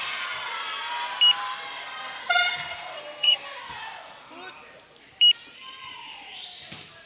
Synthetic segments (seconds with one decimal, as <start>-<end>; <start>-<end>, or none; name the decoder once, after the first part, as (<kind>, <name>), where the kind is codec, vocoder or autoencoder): 2.0-3.6 (codec, SNAC)